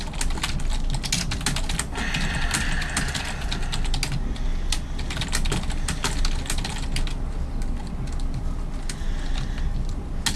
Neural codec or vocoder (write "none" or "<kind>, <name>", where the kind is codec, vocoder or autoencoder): none